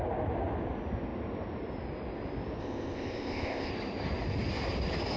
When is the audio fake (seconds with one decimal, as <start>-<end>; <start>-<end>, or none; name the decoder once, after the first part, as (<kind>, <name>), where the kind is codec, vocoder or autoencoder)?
2.6-3.7 (codec, ZipCodec)